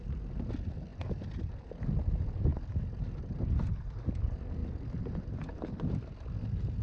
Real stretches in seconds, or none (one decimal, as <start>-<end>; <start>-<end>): 0.0-6.8